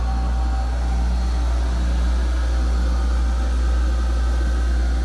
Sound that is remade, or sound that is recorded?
recorded